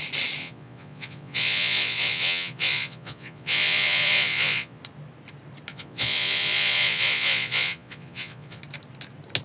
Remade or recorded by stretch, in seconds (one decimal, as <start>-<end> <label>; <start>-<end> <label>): 0.0-0.4 recorded; 0.4-4.8 remade; 4.8-5.7 recorded; 5.7-8.6 remade; 8.6-9.4 recorded